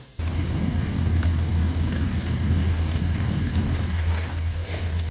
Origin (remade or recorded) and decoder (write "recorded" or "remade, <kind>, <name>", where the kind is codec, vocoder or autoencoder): remade, codec, DAC